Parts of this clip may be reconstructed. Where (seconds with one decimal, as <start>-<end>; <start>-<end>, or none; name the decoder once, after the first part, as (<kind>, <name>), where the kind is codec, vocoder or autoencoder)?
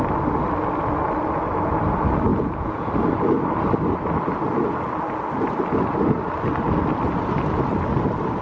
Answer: 2.3-2.9 (vocoder, Vocos)